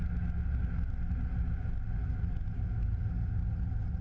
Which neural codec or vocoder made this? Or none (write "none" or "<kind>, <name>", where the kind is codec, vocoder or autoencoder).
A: none